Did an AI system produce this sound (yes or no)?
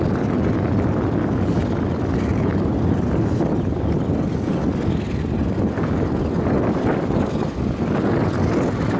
no